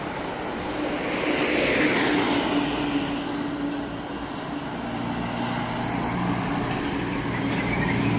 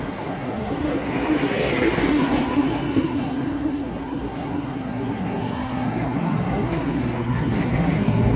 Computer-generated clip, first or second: second